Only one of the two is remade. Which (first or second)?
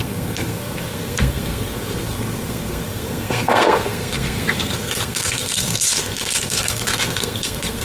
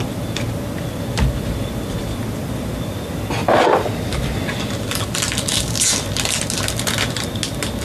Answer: first